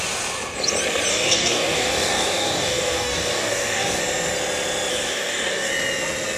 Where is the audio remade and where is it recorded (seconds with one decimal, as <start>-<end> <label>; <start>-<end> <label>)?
0.0-1.1 recorded; 1.1-4.0 remade; 4.0-4.9 recorded; 4.9-5.7 remade; 5.7-6.4 recorded